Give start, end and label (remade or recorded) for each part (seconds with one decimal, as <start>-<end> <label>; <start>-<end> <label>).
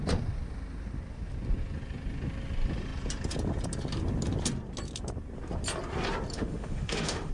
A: 0.0-6.3 recorded; 6.3-7.3 remade